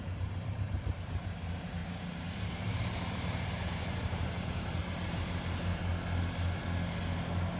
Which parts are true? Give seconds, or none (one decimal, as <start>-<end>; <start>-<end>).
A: 1.8-2.3; 5.9-7.6